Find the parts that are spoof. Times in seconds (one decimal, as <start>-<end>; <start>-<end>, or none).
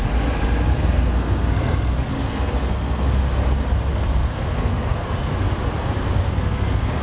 0.7-3.1; 4.2-5.3; 6.3-7.0